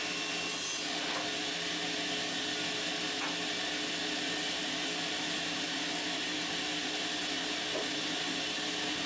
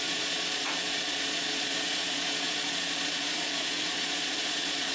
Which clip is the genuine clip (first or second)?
first